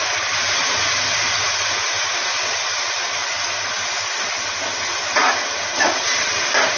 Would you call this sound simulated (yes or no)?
no